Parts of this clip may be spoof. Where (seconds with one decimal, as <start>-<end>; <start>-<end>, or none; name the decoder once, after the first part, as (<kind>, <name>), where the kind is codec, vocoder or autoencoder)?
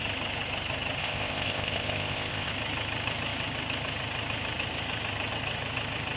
1.0-2.5 (codec, ZipCodec)